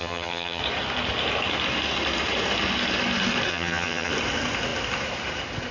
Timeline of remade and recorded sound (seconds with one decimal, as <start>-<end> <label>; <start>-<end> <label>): 0.0-0.6 remade; 0.6-3.5 recorded; 3.5-4.1 remade; 4.1-5.7 recorded